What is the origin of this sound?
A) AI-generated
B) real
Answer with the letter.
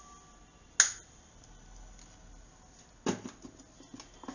B